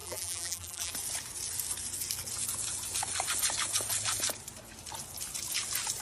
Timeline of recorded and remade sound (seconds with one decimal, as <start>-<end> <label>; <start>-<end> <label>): 0.0-0.9 remade; 0.9-6.0 recorded